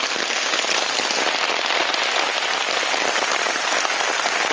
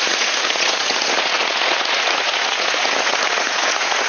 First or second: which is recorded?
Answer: first